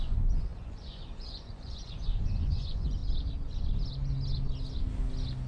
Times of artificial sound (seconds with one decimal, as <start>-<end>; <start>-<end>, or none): 0.0-3.0